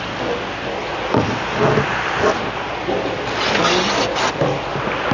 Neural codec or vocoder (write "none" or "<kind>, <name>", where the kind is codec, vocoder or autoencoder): none